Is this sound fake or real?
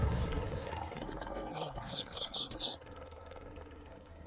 fake